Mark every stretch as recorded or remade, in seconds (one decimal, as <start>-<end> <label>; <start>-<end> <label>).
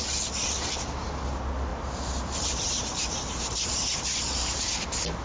0.0-1.7 recorded; 1.7-4.8 remade; 4.8-5.2 recorded